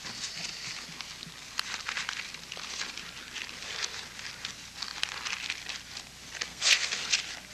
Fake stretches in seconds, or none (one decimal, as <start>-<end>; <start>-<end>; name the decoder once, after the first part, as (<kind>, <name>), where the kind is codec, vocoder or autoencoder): 6.5-7.1 (codec, SNAC)